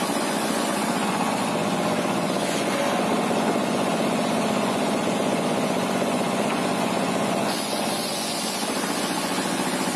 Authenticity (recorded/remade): remade